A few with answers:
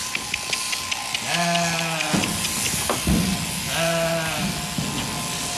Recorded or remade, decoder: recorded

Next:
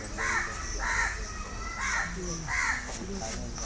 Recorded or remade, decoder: recorded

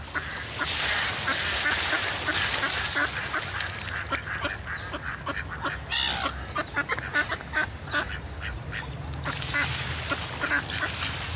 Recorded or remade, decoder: recorded